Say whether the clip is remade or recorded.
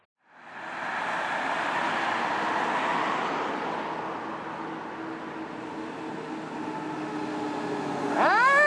recorded